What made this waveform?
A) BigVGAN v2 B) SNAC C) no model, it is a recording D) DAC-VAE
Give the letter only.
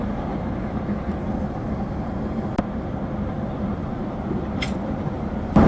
C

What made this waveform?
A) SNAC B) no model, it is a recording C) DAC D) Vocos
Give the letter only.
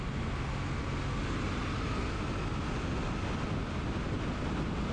B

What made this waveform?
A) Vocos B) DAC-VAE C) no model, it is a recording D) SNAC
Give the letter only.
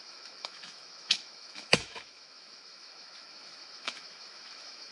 B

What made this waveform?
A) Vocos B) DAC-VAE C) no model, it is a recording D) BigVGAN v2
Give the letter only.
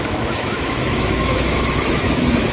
B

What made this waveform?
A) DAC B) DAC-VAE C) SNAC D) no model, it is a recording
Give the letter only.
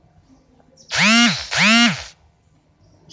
D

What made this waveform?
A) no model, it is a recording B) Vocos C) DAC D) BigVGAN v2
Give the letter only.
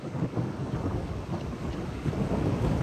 C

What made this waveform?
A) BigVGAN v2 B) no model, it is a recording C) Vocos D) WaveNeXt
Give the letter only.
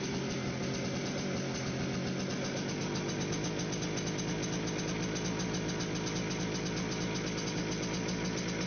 B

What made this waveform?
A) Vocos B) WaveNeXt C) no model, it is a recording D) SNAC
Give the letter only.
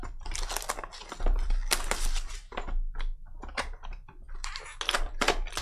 C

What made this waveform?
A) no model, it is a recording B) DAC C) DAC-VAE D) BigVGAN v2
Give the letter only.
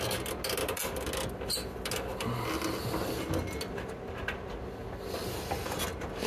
A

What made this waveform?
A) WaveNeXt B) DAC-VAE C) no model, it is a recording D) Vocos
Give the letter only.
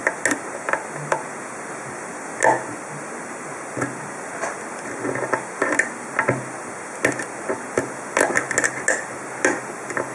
C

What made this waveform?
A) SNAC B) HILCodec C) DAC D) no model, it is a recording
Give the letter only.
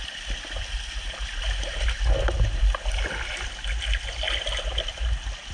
D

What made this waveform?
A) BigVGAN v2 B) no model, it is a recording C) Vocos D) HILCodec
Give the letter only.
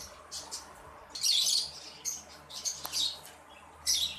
B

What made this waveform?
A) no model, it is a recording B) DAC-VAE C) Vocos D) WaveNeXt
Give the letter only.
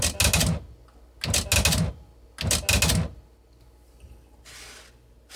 A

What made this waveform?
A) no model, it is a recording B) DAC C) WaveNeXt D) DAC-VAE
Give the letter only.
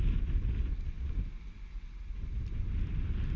A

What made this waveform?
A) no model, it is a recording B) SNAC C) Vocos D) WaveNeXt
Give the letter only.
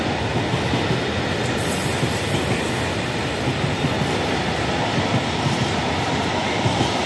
A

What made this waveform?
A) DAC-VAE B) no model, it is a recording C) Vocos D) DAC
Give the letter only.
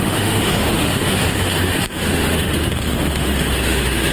A